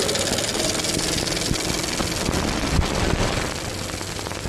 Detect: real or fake real